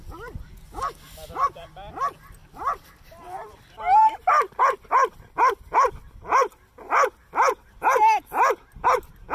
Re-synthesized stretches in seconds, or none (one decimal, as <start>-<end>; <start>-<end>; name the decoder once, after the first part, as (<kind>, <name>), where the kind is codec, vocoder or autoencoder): 2.4-3.7 (vocoder, BigVGAN v2)